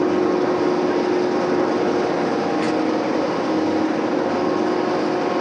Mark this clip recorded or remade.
recorded